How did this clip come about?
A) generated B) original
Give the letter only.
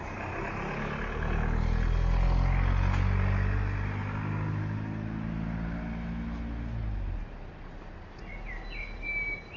B